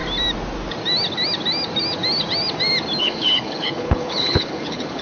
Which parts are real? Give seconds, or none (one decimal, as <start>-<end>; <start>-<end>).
0.0-3.0

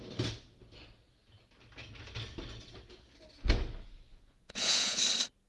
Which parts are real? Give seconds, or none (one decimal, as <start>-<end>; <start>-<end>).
0.0-4.1; 5.0-5.5